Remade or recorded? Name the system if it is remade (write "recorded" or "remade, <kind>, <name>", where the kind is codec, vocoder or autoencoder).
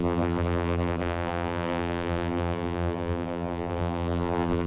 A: remade, vocoder, BigVGAN v2